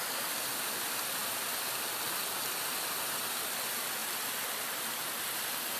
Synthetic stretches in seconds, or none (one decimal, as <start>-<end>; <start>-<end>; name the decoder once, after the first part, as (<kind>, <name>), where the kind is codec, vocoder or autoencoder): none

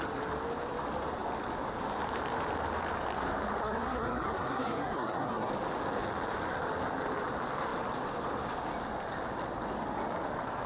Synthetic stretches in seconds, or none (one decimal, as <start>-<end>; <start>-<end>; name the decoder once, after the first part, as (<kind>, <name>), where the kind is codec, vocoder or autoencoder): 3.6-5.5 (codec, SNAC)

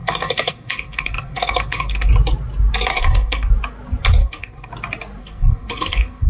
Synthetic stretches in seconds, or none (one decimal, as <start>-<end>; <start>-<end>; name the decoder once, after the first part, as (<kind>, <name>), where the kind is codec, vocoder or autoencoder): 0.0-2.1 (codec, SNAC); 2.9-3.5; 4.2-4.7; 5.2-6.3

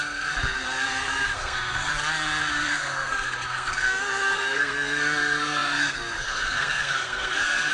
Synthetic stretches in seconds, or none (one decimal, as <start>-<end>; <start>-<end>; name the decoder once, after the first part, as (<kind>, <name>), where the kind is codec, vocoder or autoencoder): 0.0-1.9 (codec, SNAC); 2.5-7.7

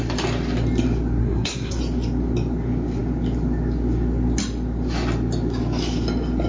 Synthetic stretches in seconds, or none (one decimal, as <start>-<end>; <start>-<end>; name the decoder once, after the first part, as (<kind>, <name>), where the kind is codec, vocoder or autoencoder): 1.2-1.8 (codec, SNAC)

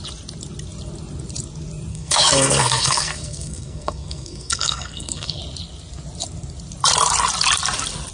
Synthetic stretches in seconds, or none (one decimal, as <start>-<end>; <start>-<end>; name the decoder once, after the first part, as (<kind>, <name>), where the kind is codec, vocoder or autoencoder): 1.9-5.4 (codec, SNAC)